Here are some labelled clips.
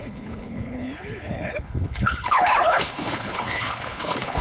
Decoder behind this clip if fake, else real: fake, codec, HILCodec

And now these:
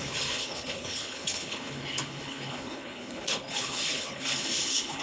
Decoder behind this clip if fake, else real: fake, codec, HILCodec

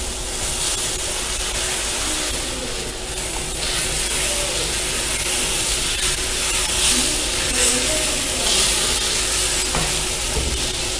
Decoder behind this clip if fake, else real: real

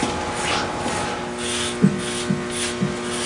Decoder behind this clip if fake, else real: real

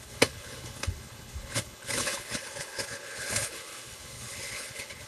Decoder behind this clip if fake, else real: fake, codec, HILCodec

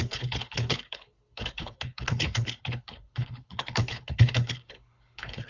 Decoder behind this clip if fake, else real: fake, codec, HILCodec